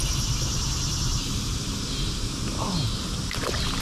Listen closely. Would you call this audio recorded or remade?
recorded